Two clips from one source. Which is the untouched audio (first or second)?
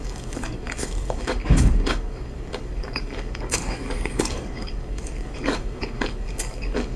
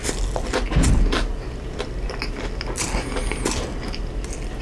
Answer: second